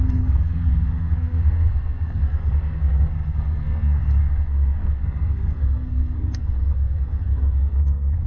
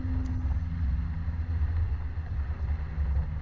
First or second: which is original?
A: second